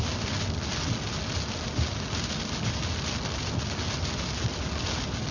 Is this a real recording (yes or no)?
yes